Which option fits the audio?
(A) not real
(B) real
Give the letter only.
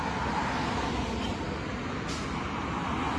B